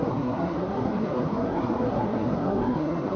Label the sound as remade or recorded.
remade